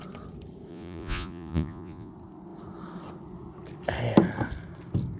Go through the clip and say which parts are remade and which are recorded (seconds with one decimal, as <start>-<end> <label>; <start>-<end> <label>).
0.0-0.7 recorded; 0.7-2.1 remade; 2.1-5.2 recorded